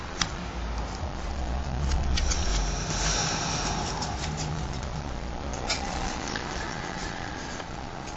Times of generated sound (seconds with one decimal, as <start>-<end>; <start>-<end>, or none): 0.0-0.4; 1.0-2.5; 4.5-8.2